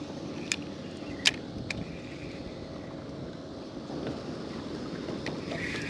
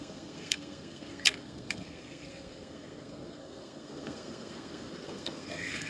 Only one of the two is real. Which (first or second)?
first